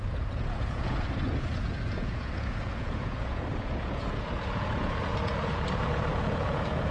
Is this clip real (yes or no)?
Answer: no